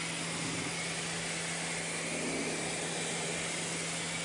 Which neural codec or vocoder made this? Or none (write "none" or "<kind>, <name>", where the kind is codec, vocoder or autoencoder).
none